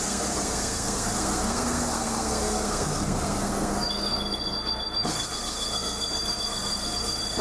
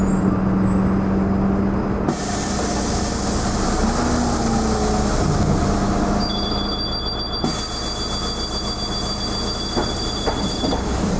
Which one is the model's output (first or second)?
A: first